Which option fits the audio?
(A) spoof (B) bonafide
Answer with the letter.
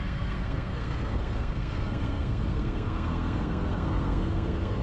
A